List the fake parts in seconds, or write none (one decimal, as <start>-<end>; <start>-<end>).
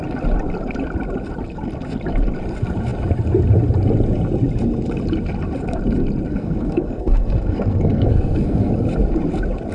6.3-8.7